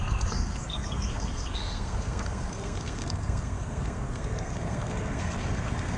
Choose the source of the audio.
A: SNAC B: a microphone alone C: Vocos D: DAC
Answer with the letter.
A